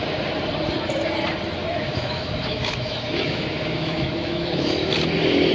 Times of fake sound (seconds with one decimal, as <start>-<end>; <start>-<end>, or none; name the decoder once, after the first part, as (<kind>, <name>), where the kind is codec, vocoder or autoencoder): 1.6-4.9 (autoencoder, DAC-VAE)